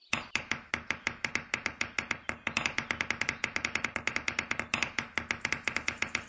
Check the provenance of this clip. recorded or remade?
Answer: recorded